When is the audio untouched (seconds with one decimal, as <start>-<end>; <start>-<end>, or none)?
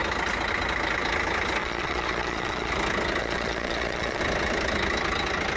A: 0.0-1.6; 2.7-3.2; 4.2-5.6